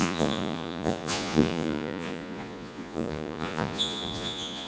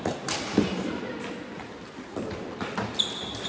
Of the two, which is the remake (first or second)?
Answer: first